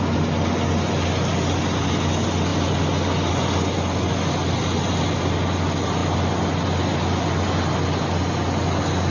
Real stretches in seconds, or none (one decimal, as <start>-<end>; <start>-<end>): 0.0-9.1